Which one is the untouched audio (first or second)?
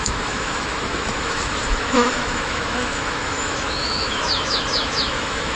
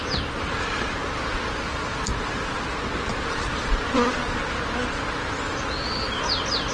second